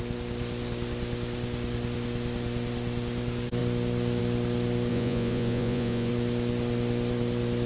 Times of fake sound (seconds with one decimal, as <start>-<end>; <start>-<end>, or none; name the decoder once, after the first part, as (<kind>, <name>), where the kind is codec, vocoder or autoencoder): 4.9-6.1 (vocoder, Vocos)